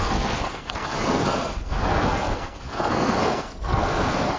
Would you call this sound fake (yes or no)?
yes